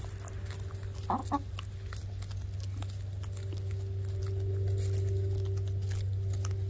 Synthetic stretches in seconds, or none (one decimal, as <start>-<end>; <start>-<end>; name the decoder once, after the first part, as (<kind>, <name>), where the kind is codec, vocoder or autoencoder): none